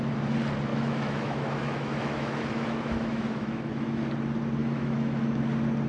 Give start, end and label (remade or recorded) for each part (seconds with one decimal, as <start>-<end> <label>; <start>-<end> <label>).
0.0-0.7 recorded; 0.7-4.0 remade; 4.0-4.6 recorded; 4.6-5.4 remade; 5.4-5.9 recorded